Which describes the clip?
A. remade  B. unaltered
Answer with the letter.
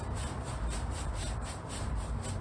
A